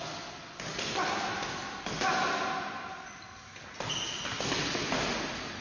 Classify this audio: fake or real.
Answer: real